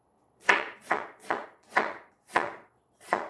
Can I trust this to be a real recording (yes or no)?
no